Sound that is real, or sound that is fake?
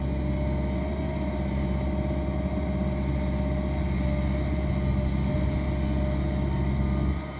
real